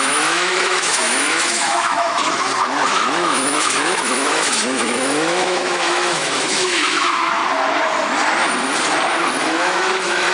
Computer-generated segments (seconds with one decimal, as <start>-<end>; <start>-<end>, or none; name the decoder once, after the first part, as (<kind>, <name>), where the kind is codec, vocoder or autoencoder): 0.0-2.2 (autoencoder, DAC-VAE); 2.9-7.4; 9.4-10.3